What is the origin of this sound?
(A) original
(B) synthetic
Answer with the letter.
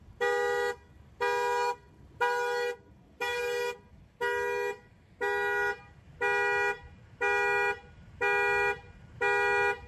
A